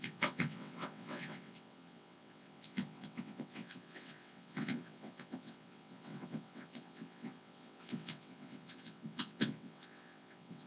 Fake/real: fake